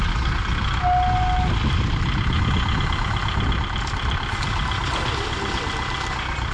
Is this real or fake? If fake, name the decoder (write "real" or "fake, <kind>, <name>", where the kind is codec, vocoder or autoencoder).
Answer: real